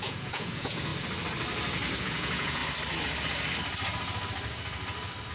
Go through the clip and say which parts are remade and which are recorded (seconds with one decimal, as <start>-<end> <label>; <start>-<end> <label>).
0.0-0.9 remade; 0.9-2.0 recorded; 2.0-2.6 remade; 2.6-5.3 recorded